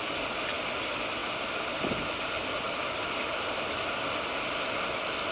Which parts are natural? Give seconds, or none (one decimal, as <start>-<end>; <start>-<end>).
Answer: 0.0-5.3